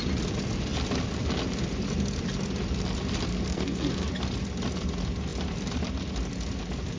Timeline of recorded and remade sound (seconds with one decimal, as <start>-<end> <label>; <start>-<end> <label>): 0.0-3.3 recorded; 3.3-4.1 remade; 4.1-7.0 recorded